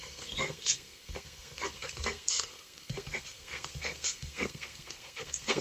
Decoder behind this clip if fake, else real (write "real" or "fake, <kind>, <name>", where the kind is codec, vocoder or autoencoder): fake, codec, SNAC